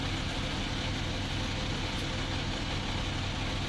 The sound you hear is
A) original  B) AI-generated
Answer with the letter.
A